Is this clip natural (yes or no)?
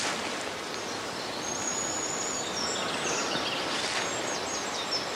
yes